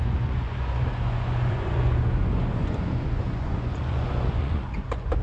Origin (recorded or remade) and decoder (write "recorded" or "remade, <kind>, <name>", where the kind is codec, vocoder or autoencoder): remade, vocoder, Vocos